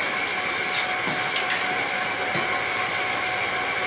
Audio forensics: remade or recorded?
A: recorded